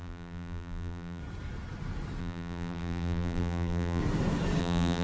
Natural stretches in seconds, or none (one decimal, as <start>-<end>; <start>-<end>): 1.2-2.2; 4.0-4.6